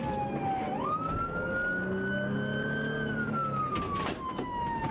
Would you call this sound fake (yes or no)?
no